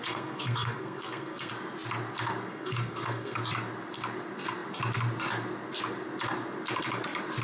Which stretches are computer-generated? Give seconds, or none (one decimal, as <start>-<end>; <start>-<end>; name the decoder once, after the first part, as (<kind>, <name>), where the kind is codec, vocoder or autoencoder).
0.0-1.5 (codec, SNAC); 2.5-3.4